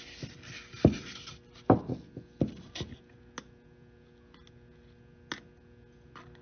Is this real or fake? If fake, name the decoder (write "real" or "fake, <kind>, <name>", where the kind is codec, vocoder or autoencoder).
real